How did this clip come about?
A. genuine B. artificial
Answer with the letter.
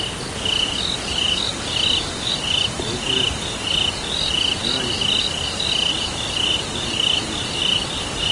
A